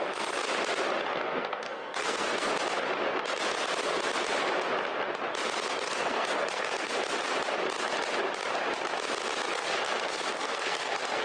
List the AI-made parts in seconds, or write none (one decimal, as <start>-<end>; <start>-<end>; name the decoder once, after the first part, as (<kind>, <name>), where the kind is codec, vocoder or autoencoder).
0.0-0.4 (codec, SNAC); 1.1-2.5; 5.7-6.9; 9.5-11.2